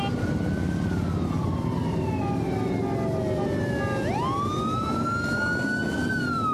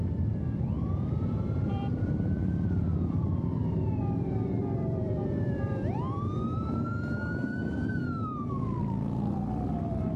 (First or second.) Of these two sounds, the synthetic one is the second